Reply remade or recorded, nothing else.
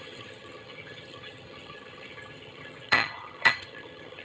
remade